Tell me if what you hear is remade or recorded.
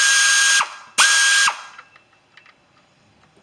recorded